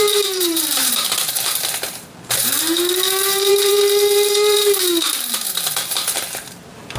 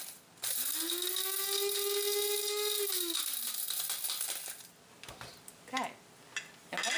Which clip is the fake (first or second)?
first